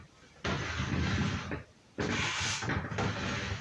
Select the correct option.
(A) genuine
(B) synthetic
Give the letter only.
A